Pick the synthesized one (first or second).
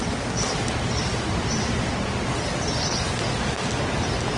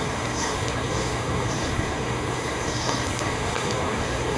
second